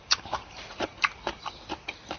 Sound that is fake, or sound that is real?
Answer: fake